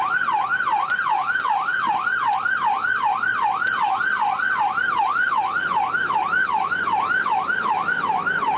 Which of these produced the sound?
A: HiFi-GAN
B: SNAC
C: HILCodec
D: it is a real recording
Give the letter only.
D